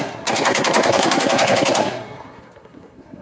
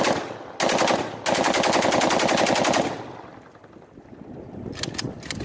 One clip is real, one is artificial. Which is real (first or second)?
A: second